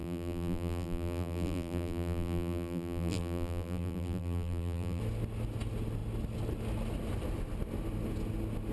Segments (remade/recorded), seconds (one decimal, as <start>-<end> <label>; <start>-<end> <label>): 0.0-5.0 remade; 5.0-8.7 recorded